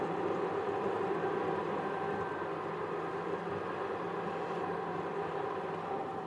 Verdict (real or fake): real